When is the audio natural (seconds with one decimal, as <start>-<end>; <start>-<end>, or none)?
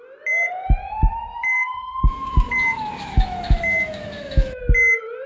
0.0-1.4; 4.6-5.3